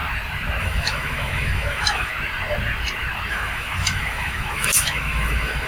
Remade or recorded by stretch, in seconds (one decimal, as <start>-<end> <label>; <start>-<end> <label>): 0.0-0.6 recorded; 0.6-2.1 remade; 2.1-3.3 recorded; 3.3-5.7 remade